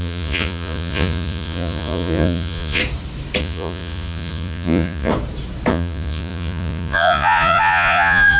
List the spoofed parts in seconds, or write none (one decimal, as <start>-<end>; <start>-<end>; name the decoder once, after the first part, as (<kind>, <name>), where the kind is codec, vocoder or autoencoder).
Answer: 0.0-2.8 (vocoder, Vocos); 3.4-5.1; 5.7-8.4